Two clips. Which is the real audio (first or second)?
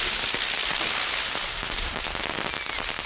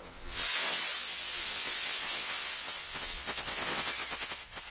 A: first